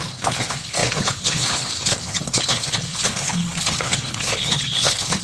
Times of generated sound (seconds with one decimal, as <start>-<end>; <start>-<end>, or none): 0.0-5.2